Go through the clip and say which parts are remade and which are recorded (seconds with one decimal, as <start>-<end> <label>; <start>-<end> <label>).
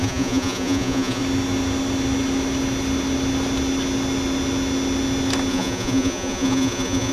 0.0-1.2 remade; 1.2-5.5 recorded; 5.5-7.1 remade